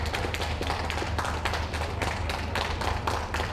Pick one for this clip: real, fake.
real